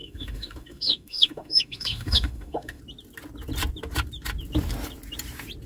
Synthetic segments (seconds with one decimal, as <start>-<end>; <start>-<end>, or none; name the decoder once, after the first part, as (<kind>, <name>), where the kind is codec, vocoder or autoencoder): 0.0-2.8 (autoencoder, DAC-VAE)